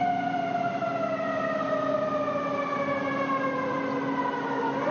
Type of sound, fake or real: real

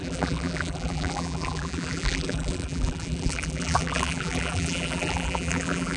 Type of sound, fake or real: fake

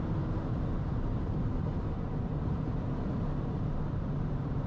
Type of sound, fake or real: fake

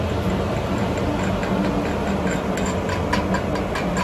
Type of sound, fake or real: real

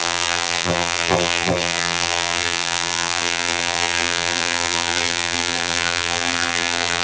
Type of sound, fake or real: fake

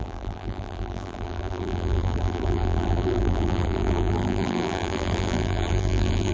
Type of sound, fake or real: fake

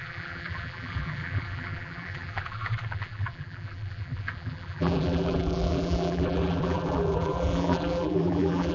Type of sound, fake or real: fake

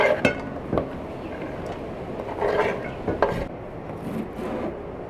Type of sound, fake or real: real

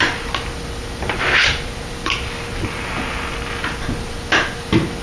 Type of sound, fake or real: real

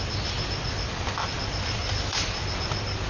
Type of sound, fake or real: real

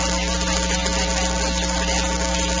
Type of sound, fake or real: real